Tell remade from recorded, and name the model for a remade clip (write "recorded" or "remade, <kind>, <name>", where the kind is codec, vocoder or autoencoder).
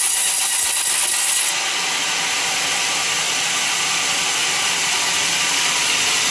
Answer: recorded